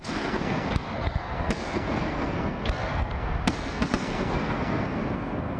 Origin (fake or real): fake